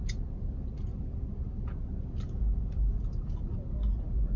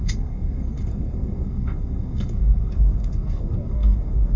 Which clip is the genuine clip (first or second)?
first